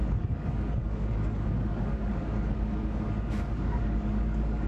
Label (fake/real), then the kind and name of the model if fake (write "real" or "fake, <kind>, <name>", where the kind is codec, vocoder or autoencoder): fake, codec, DAC